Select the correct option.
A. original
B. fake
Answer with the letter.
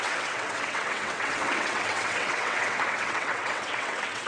B